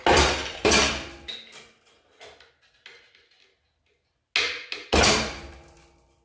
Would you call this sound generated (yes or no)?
no